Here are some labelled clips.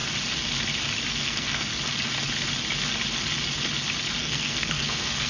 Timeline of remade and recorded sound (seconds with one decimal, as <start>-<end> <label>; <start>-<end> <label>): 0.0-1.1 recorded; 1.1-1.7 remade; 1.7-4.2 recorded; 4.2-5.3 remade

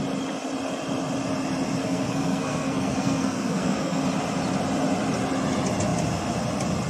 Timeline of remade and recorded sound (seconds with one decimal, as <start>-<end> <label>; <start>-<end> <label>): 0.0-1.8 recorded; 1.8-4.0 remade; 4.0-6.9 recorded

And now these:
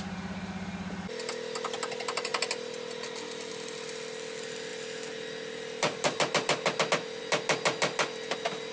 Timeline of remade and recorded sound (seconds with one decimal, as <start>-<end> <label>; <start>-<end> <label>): 0.0-8.7 recorded

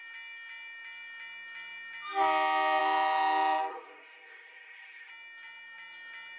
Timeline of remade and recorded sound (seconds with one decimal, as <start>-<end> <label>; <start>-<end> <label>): 0.0-3.7 recorded; 3.7-5.1 remade; 5.1-6.4 recorded

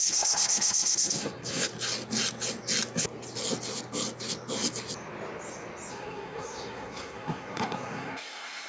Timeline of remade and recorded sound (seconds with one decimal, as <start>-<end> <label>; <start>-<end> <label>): 0.0-1.7 remade; 1.7-5.9 recorded; 5.9-8.7 remade

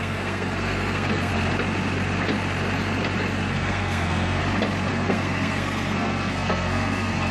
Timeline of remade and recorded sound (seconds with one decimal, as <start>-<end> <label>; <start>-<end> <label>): 0.0-1.3 remade; 1.3-3.5 recorded; 3.5-4.4 remade; 4.4-4.9 recorded; 4.9-7.3 remade